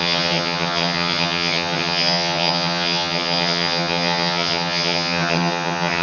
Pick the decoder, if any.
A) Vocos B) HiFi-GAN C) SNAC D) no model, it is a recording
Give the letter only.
B